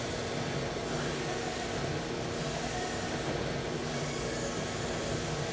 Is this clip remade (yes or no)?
no